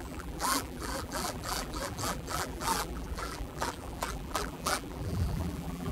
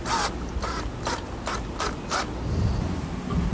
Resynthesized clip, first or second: first